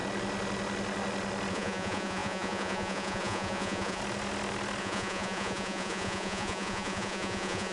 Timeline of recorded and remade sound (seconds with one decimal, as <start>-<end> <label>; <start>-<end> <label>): 0.0-1.5 recorded; 1.5-4.0 remade; 4.0-4.8 recorded; 4.8-7.7 remade